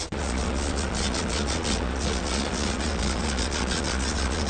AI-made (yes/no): yes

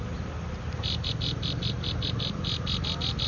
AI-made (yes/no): no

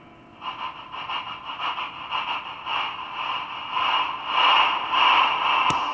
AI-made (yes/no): no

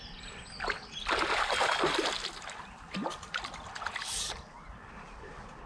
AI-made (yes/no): no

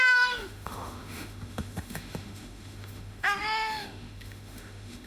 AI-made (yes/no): yes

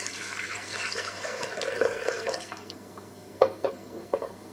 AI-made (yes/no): yes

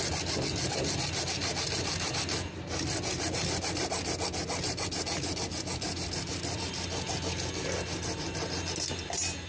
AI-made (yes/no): no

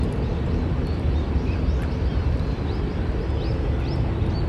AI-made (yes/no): no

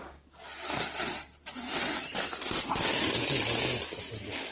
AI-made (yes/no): no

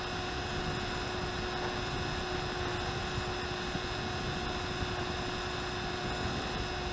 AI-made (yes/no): no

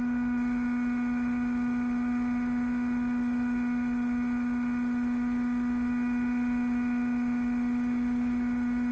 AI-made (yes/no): no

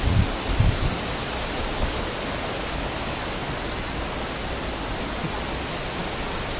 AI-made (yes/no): no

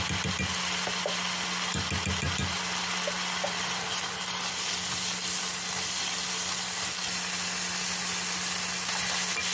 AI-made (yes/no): no